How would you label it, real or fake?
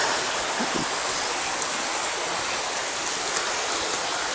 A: real